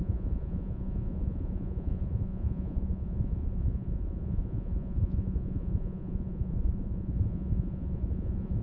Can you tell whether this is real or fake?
fake